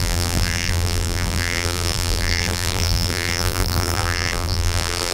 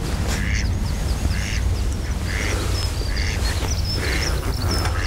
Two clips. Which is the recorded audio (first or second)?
second